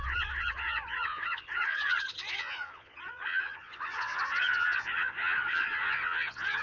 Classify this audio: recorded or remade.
remade